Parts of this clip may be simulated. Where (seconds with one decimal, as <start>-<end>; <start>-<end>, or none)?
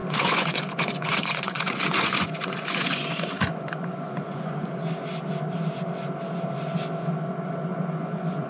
0.0-4.7; 7.7-8.5